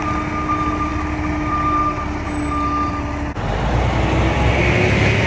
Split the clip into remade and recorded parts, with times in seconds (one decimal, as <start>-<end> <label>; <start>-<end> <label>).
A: 0.0-5.3 recorded